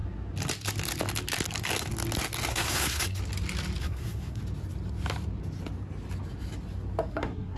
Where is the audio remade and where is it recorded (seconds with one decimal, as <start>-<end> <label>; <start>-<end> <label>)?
0.0-2.5 recorded; 2.5-3.2 remade; 3.2-3.8 recorded; 3.8-4.4 remade; 4.4-7.1 recorded; 7.1-7.6 remade